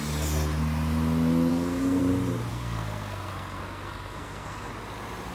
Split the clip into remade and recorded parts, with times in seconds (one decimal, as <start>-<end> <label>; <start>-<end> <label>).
0.0-1.5 recorded; 1.5-2.0 remade; 2.0-2.5 recorded; 2.5-4.7 remade; 4.7-5.3 recorded

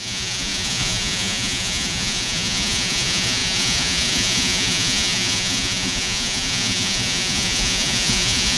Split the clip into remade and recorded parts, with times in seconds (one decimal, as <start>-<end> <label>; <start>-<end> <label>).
0.0-8.6 remade

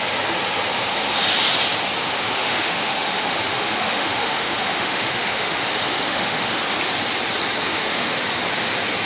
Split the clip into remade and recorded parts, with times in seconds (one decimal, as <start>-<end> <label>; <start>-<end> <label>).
0.0-2.0 recorded; 2.0-6.6 remade; 6.6-7.7 recorded; 7.7-8.2 remade; 8.2-9.1 recorded